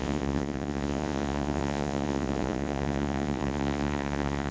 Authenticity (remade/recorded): remade